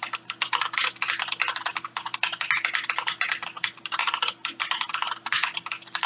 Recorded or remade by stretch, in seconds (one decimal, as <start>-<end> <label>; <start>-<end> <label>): 0.0-6.1 recorded